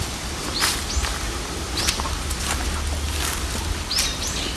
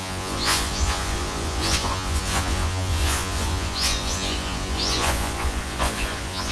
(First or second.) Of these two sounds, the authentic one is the first